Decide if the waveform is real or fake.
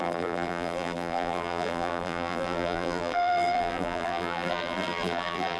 fake